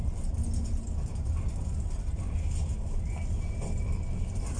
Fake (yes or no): no